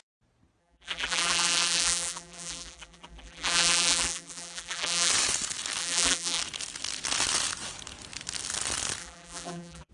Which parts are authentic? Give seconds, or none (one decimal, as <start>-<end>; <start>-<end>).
0.0-0.6; 5.1-5.8; 6.4-9.0